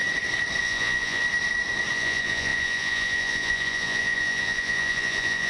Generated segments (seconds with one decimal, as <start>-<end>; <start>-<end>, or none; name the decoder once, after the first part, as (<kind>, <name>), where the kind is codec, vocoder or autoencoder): 0.6-1.2 (vocoder, Vocos); 1.9-5.5